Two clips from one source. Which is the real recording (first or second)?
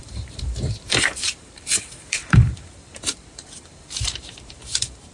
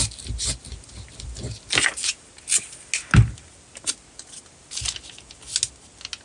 second